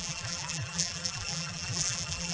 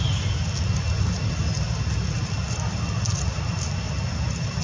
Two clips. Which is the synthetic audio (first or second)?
first